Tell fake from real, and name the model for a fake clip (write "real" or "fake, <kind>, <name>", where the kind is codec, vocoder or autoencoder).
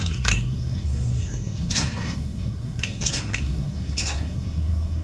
fake, codec, SNAC